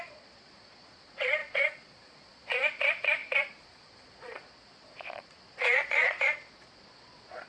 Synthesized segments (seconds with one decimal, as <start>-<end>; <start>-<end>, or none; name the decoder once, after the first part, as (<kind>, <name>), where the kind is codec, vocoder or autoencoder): 0.0-7.5 (vocoder, Vocos)